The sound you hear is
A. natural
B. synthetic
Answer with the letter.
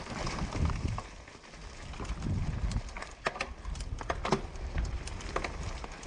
A